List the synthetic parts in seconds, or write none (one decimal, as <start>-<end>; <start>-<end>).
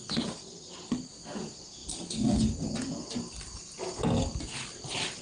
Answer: none